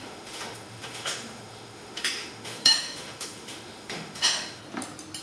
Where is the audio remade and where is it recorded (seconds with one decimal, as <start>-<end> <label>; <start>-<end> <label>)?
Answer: 0.0-4.6 remade; 4.6-5.2 recorded

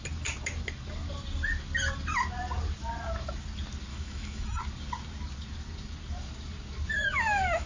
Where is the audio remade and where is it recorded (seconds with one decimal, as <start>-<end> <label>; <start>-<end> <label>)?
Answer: 0.0-3.9 recorded; 3.9-4.6 remade; 4.6-6.9 recorded; 6.9-7.7 remade

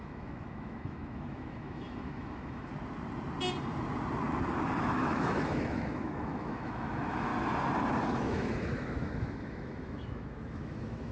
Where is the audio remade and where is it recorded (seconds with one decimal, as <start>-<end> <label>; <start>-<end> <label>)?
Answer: 0.0-2.7 remade; 2.7-5.0 recorded; 5.0-7.3 remade; 7.3-8.1 recorded; 8.1-11.1 remade

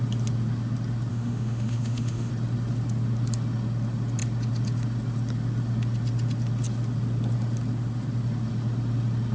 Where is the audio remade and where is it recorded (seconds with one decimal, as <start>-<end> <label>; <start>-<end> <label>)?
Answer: 0.0-1.1 recorded; 1.1-2.3 remade; 2.3-9.3 recorded

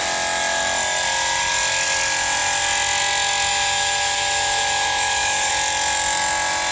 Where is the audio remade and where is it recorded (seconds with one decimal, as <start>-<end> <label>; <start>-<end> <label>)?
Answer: 0.0-3.5 recorded; 3.5-5.5 remade; 5.5-6.7 recorded

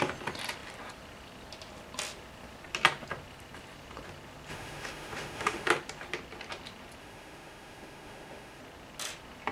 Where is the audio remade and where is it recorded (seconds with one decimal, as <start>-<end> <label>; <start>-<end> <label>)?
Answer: 0.0-4.5 recorded; 4.5-5.7 remade; 5.7-7.0 recorded; 7.0-8.6 remade; 8.6-9.5 recorded